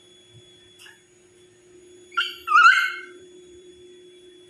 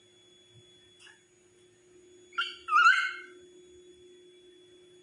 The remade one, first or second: first